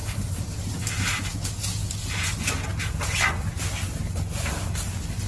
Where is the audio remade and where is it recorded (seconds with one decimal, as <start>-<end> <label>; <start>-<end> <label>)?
0.0-5.3 recorded